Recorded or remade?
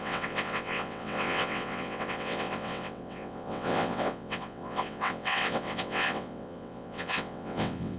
remade